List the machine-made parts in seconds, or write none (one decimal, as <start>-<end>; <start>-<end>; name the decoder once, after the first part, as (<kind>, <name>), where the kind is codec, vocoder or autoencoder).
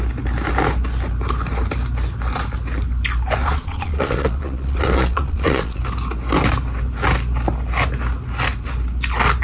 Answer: 3.4-5.8 (vocoder, Vocos)